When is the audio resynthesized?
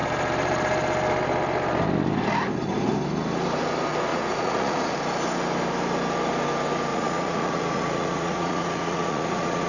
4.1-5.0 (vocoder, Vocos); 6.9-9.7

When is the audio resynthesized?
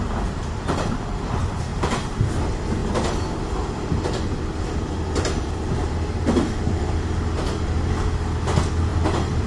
8.9-9.5 (vocoder, BigVGAN v2)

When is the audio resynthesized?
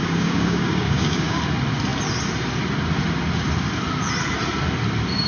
0.0-1.4 (codec, DAC)